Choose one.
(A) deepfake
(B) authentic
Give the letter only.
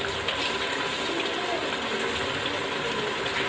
B